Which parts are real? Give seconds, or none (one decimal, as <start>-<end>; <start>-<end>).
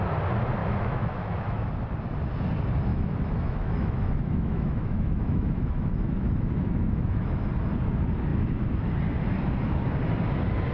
0.0-0.6; 1.7-2.9; 7.5-10.7